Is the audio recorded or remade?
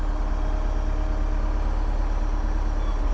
recorded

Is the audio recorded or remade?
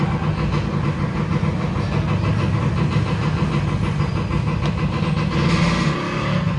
recorded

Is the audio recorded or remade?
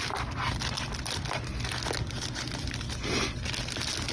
recorded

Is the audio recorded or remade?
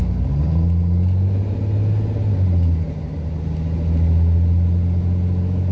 recorded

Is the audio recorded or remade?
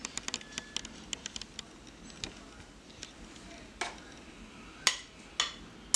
recorded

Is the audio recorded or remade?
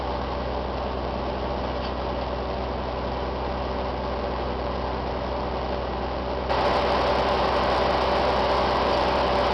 recorded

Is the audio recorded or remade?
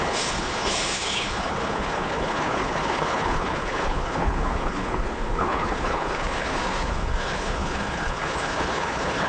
remade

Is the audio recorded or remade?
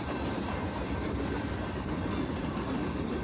recorded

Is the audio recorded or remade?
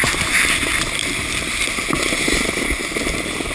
recorded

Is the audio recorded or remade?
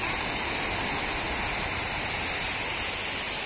recorded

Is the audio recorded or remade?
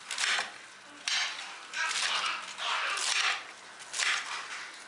recorded